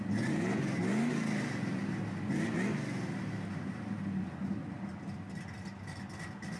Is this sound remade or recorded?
recorded